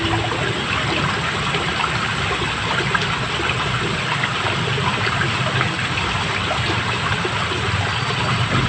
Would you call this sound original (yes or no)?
yes